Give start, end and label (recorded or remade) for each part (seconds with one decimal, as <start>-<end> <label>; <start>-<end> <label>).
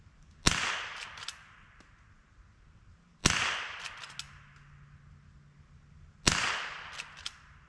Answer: 0.0-7.7 recorded